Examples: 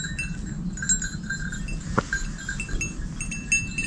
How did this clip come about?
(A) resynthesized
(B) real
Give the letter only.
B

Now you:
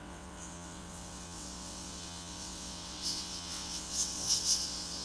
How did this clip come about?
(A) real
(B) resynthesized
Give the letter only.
B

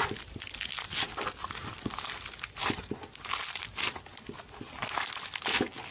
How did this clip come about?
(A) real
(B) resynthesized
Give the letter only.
A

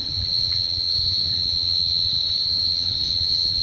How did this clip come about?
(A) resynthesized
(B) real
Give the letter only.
A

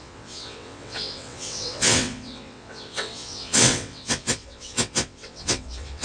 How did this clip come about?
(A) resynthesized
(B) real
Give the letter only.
A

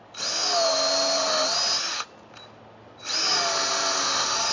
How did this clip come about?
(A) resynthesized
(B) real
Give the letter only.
B